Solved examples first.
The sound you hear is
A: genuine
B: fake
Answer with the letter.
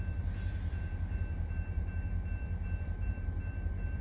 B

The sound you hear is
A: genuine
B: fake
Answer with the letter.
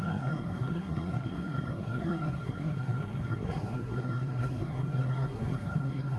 B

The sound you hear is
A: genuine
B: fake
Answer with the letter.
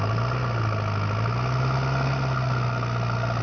A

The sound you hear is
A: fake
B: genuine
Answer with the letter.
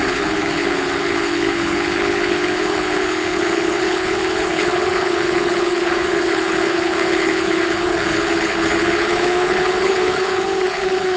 A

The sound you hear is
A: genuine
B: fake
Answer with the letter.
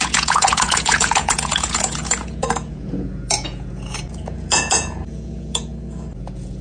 B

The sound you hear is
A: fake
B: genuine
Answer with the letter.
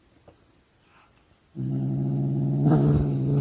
B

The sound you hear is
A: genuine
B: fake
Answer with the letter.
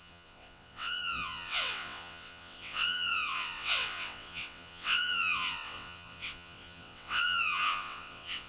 B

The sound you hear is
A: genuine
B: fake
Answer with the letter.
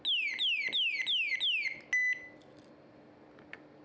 A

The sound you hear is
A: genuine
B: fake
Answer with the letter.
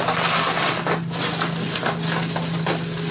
B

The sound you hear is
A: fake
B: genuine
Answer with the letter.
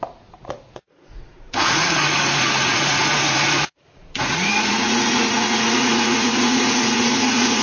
A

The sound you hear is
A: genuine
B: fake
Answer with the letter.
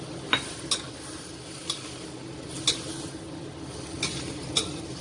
A